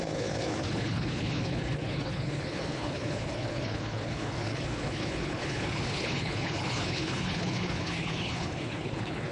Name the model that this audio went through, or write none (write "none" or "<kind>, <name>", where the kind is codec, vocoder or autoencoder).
codec, HILCodec